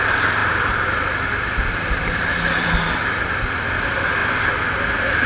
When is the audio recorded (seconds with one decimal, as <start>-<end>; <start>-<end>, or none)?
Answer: 0.0-5.3